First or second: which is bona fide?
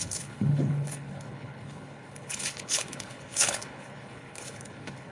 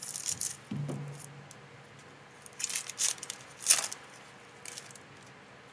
second